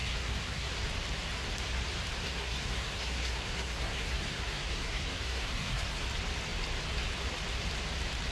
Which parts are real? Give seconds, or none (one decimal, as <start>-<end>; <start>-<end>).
0.7-2.2; 6.0-8.3